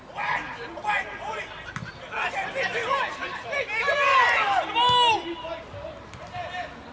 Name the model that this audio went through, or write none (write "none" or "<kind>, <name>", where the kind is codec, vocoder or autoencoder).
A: none